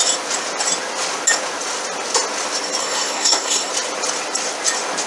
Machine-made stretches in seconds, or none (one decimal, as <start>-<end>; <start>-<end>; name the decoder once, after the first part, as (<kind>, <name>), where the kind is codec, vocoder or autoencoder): 2.8-3.7 (codec, SNAC)